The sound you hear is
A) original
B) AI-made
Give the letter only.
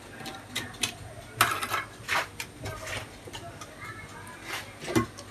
A